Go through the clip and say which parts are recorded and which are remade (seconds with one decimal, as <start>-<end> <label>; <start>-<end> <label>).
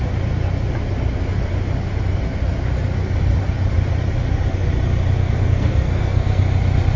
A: 0.0-5.2 recorded; 5.2-6.4 remade; 6.4-7.0 recorded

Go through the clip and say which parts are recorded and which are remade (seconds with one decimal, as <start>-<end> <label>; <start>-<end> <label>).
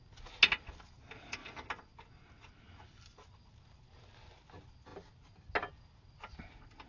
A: 0.0-6.9 recorded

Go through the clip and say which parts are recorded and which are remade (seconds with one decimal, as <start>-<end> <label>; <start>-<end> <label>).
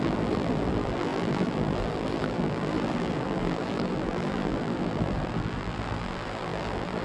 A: 0.0-7.0 remade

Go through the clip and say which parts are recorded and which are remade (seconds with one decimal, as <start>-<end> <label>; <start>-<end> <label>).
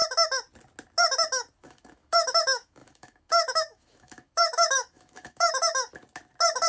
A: 0.0-1.6 recorded; 1.6-5.7 remade; 5.7-6.7 recorded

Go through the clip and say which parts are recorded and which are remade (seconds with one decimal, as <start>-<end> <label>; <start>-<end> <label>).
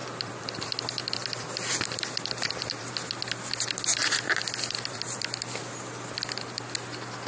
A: 0.0-2.9 remade; 2.9-4.0 recorded; 4.0-5.2 remade; 5.2-7.3 recorded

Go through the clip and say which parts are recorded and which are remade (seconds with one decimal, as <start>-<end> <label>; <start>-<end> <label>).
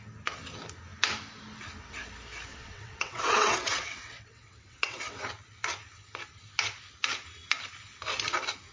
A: 0.0-2.5 recorded; 2.5-5.2 remade; 5.2-8.7 recorded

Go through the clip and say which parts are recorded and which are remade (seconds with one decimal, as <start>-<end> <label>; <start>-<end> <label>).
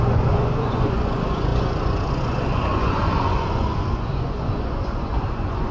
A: 0.0-5.7 remade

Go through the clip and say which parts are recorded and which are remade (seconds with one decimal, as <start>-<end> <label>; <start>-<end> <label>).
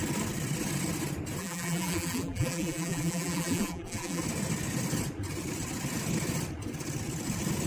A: 0.0-1.4 recorded; 1.4-4.2 remade; 4.2-7.7 recorded